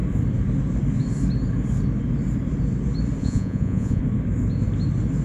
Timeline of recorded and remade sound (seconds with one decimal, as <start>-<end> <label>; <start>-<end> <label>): 0.0-3.2 recorded; 3.2-4.0 remade; 4.0-5.2 recorded